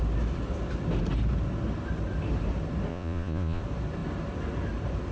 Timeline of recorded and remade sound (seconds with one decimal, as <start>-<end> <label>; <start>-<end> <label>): 0.0-2.9 recorded; 2.9-3.6 remade; 3.6-5.1 recorded